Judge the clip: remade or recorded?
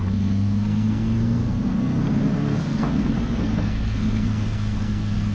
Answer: remade